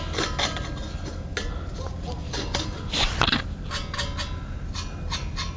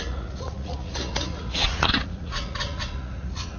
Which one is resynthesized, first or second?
second